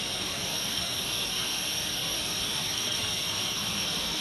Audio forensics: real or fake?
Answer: fake